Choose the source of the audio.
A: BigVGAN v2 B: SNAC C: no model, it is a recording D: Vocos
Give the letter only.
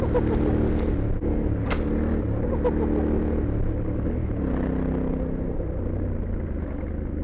C